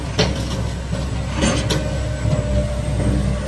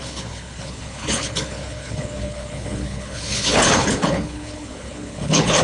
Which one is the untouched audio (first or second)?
first